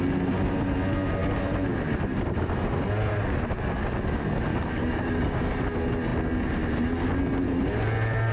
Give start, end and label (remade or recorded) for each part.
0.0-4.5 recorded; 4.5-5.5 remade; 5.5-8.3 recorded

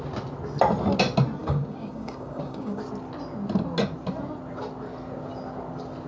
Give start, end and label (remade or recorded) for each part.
0.0-1.4 recorded; 1.4-2.8 remade; 2.8-6.1 recorded

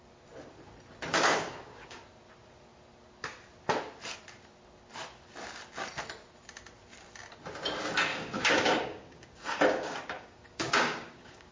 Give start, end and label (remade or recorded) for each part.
0.0-1.1 recorded; 1.1-2.0 remade; 2.0-8.1 recorded; 8.1-11.5 remade

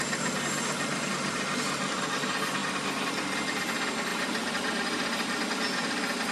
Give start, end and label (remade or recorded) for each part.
0.0-6.3 recorded